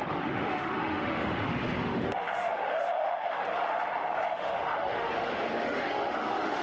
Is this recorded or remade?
remade